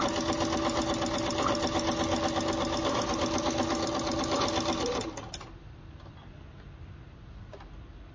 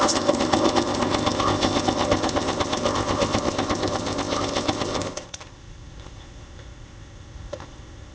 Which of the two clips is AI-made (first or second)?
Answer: second